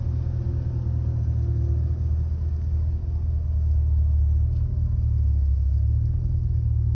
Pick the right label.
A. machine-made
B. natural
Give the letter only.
B